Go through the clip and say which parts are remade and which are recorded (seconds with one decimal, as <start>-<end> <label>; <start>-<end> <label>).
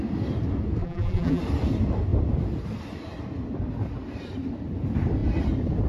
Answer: 0.0-0.8 recorded; 0.8-1.4 remade; 1.4-5.9 recorded